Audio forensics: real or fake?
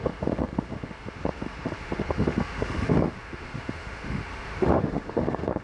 fake